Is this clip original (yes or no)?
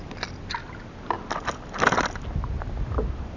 yes